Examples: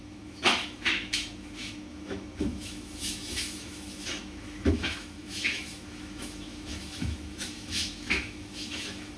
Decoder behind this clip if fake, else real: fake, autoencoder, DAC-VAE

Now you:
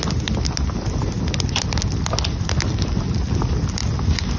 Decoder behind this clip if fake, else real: real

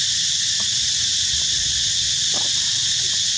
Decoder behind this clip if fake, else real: real